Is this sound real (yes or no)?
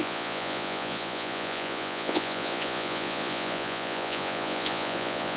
no